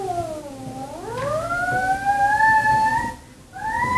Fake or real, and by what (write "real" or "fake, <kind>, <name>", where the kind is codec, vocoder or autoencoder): real